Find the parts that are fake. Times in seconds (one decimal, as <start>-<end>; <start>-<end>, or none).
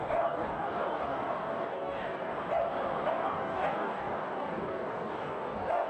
0.0-2.3; 3.1-5.9